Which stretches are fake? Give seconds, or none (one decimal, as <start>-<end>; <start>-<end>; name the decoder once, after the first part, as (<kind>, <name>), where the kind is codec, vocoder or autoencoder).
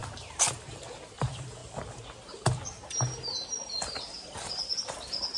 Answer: 0.7-1.6 (vocoder, BigVGAN v2); 4.5-5.4